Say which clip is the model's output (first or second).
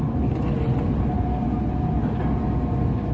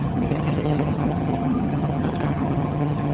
second